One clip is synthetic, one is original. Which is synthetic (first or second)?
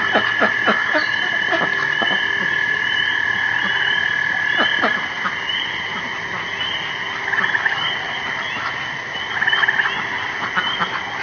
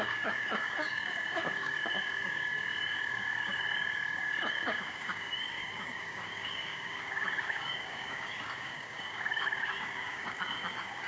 second